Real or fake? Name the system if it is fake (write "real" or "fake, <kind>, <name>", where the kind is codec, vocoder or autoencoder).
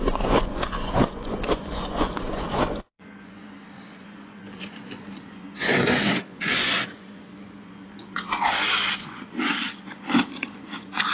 fake, vocoder, Vocos